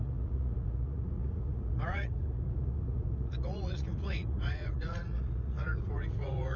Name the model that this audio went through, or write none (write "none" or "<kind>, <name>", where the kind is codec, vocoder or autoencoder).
vocoder, Vocos